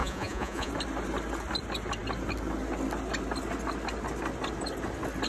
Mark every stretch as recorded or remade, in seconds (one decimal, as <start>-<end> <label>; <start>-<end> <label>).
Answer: 0.0-0.7 remade; 0.7-5.3 recorded